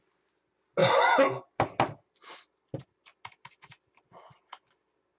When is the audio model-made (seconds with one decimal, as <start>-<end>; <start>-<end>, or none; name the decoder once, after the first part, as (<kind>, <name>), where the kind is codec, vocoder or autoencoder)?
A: none